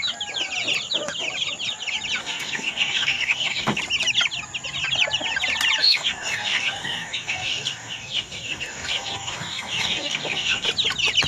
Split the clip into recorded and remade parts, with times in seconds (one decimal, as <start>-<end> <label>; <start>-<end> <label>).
0.0-2.2 recorded; 2.2-3.8 remade; 3.8-5.8 recorded; 5.8-10.7 remade; 10.7-11.3 recorded